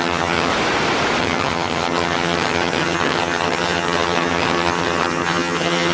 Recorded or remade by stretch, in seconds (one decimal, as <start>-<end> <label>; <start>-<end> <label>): 0.0-0.5 remade; 0.5-1.2 recorded; 1.2-5.9 remade